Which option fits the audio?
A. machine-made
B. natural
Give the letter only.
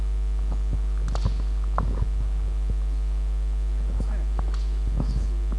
B